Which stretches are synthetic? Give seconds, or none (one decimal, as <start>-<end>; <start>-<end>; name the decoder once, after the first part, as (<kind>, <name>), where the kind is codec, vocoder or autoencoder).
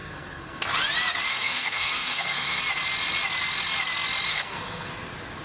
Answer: 0.0-0.6 (codec, SNAC); 1.3-2.6; 4.3-4.9